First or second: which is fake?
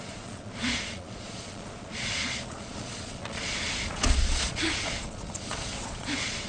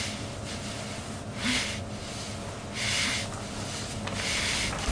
first